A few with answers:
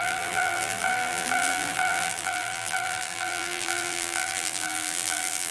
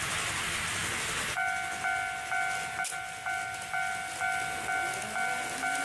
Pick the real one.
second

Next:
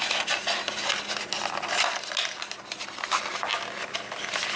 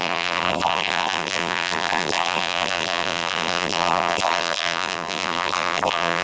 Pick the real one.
first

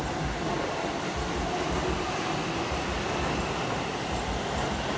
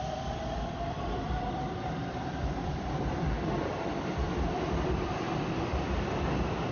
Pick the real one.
first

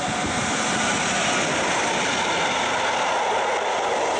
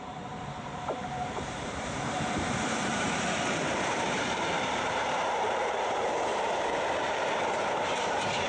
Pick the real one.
first